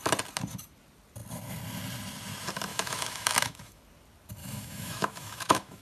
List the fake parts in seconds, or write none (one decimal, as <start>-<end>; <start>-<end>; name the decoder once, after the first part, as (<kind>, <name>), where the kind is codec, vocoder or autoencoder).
2.7-3.8 (autoencoder, DAC-VAE); 4.4-5.8